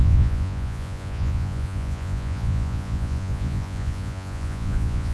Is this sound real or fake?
fake